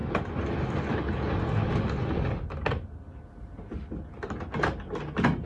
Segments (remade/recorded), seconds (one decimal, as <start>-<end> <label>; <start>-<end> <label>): 0.0-5.5 recorded

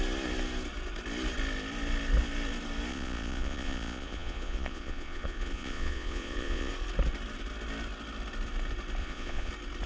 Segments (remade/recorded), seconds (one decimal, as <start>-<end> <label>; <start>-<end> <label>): 0.0-2.9 recorded; 2.9-6.7 remade; 6.7-9.0 recorded; 9.0-9.5 remade; 9.5-9.9 recorded

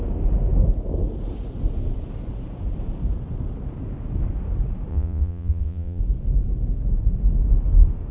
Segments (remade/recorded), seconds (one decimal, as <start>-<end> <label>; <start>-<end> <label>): 0.0-4.9 recorded; 4.9-6.0 remade; 6.0-8.1 recorded

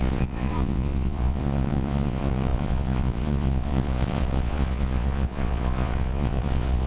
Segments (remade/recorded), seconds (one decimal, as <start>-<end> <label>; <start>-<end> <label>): 0.0-6.9 remade

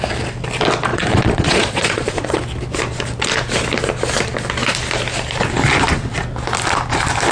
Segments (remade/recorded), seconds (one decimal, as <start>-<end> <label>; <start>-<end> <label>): 0.0-0.9 recorded; 0.9-2.4 remade; 2.4-7.3 recorded

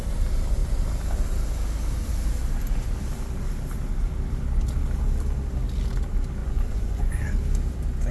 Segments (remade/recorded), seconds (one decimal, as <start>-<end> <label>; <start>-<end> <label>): 0.0-6.4 recorded; 6.4-7.2 remade; 7.2-8.1 recorded

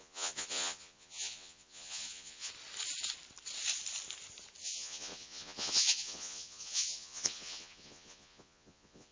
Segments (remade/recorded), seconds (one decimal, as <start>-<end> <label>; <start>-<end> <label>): 0.0-2.5 remade; 2.5-4.6 recorded; 4.6-9.1 remade